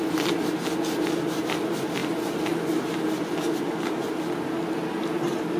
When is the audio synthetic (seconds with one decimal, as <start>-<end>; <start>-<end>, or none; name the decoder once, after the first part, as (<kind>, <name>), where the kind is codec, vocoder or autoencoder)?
none